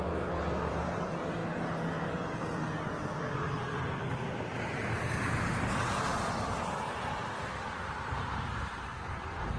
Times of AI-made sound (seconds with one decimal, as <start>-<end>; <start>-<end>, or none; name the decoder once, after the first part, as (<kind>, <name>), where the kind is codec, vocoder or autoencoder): 0.0-1.4 (vocoder, BigVGAN v2); 5.7-9.6